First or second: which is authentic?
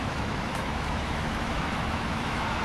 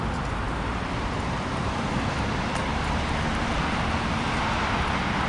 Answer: second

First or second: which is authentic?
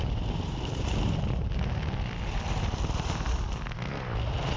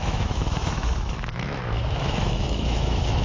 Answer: first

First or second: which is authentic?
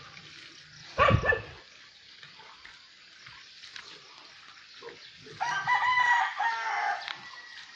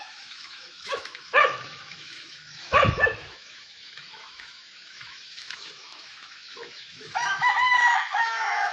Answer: first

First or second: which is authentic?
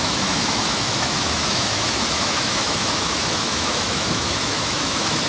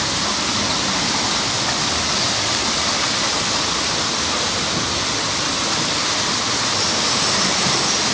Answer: second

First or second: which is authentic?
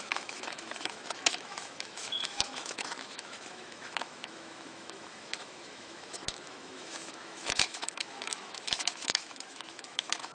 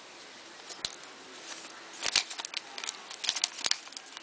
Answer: second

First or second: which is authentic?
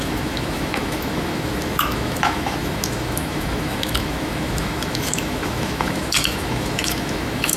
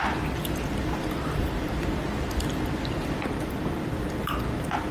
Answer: second